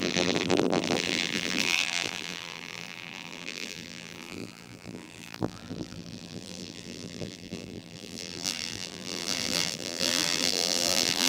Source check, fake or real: fake